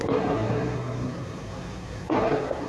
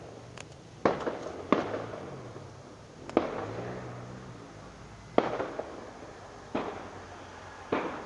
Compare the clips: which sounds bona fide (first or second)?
second